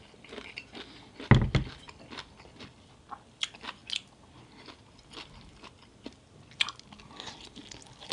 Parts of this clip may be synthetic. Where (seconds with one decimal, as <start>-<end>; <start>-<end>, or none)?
none